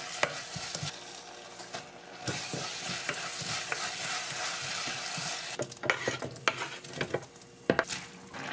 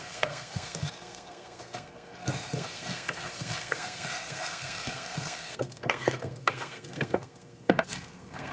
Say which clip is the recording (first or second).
first